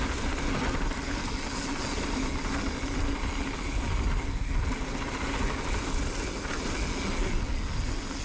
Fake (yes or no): no